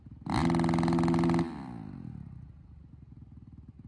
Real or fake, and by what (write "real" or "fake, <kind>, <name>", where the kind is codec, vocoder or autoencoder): real